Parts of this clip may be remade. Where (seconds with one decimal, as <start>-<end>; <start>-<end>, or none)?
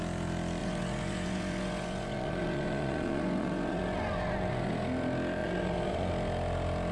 0.6-4.7; 5.4-6.1